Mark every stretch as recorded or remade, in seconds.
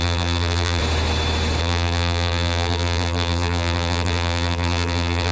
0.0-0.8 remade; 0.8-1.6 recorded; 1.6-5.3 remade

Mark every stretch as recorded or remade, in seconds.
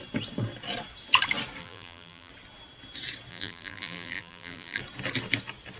0.0-1.6 recorded; 1.6-2.3 remade; 2.3-3.3 recorded; 3.3-4.8 remade; 4.8-5.8 recorded